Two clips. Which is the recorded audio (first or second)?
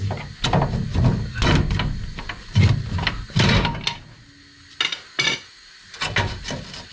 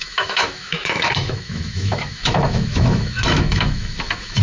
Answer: first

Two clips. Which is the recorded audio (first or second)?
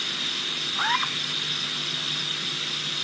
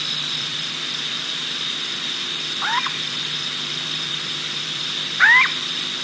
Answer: first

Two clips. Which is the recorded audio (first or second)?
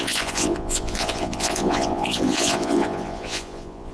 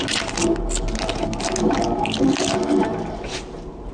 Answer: second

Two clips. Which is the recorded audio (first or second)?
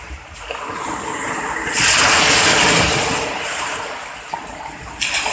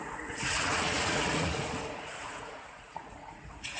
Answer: first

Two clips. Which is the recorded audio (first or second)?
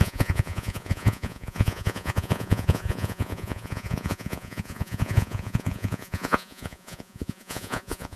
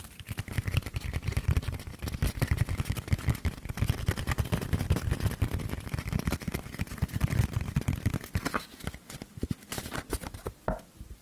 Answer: second